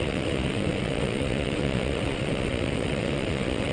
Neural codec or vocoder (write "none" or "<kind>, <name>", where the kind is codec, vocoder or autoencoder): vocoder, WaveNeXt